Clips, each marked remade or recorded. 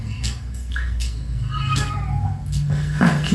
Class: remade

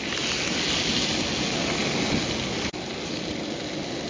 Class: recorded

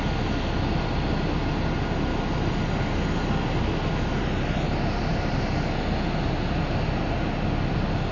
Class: recorded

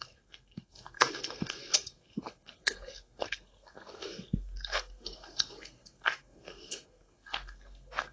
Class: remade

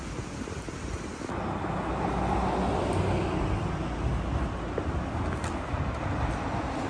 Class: recorded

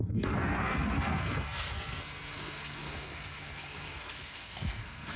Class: remade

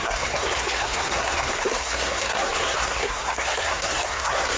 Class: remade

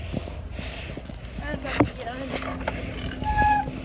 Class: recorded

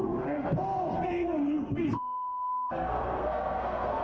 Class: remade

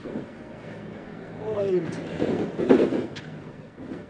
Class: remade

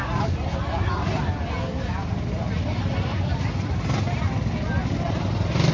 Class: recorded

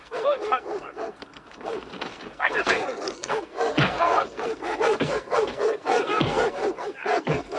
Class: remade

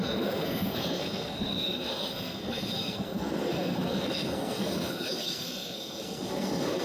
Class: remade